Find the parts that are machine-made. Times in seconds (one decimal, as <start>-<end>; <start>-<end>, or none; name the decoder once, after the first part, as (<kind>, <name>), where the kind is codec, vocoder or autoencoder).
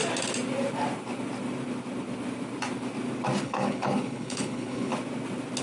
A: 3.4-4.9 (codec, HILCodec)